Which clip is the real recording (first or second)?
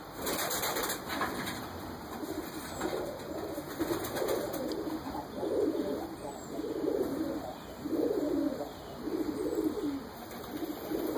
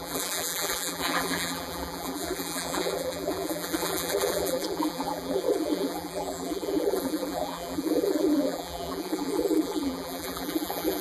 first